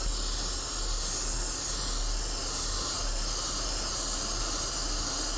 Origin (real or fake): real